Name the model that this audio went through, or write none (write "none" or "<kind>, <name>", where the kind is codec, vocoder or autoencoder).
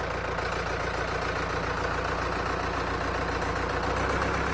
none